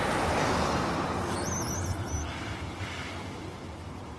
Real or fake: real